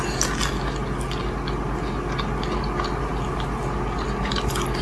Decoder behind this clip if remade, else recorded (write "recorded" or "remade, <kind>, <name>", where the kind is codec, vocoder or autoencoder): recorded